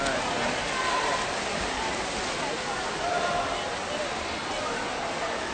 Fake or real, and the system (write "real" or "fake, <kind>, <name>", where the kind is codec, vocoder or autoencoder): real